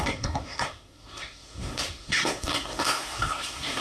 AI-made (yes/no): yes